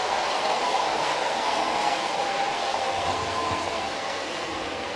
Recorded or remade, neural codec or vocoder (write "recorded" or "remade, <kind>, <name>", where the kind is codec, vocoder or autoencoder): remade, codec, SNAC